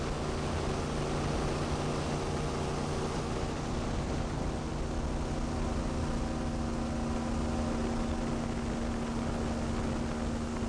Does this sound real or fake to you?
real